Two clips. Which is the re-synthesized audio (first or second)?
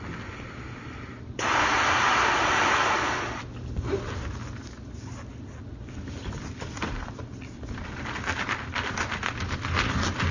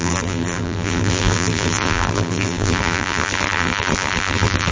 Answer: second